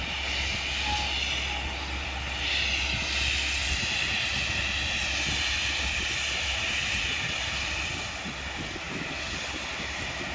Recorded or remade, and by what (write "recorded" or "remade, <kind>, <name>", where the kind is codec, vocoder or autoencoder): recorded